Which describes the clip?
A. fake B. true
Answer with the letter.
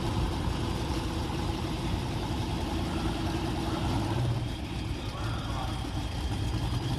A